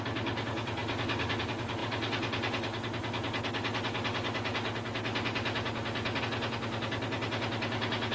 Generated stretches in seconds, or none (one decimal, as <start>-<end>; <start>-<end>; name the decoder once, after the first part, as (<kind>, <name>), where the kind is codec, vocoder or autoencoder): none